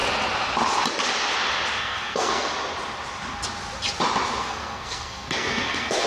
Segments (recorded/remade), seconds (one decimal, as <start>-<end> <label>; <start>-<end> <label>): 0.0-1.8 recorded; 1.8-2.5 remade; 2.5-4.4 recorded; 4.4-6.1 remade